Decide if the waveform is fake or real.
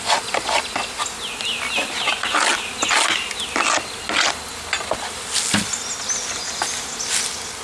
real